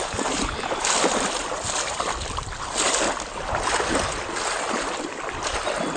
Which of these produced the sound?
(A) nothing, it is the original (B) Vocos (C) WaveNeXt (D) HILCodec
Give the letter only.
A